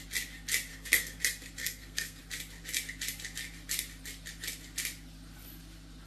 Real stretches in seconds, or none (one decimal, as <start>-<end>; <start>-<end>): 0.0-0.7; 1.2-1.6; 2.2-6.1